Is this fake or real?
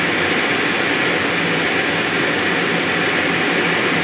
real